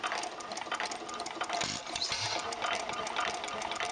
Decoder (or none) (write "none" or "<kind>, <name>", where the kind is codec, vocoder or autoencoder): none